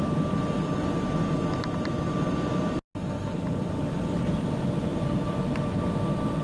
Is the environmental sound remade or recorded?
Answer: recorded